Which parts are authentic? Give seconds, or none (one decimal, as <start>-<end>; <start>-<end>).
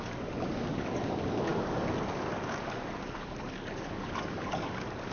none